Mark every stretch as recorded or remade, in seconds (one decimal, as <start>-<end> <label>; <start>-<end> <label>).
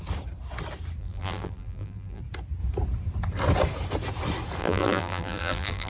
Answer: 0.0-1.0 recorded; 1.0-2.2 remade; 2.2-4.6 recorded; 4.6-5.9 remade